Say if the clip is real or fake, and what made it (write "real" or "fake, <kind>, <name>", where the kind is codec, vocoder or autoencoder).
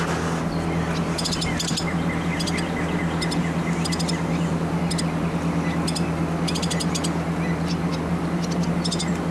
real